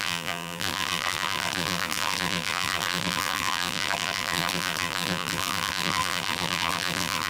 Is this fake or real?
fake